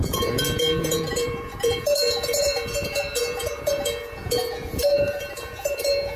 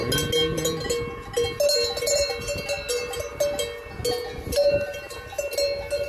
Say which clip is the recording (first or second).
second